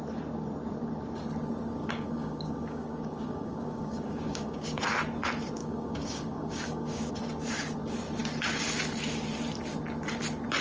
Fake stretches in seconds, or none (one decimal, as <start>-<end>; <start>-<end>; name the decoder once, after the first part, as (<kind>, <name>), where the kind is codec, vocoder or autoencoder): 1.8-4.8 (codec, DAC); 5.6-7.1